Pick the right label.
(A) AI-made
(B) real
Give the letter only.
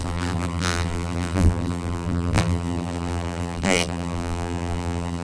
A